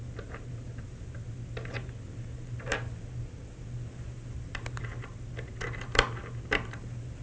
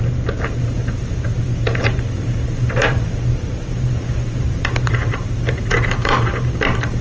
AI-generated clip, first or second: second